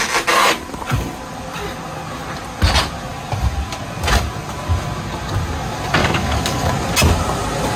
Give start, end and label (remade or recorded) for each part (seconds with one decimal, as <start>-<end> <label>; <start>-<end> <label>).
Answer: 0.0-6.0 recorded; 6.0-6.7 remade; 6.7-7.8 recorded